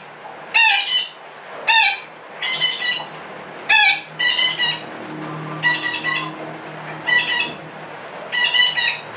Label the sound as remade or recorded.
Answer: recorded